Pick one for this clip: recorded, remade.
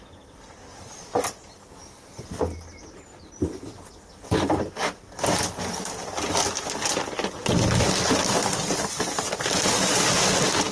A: recorded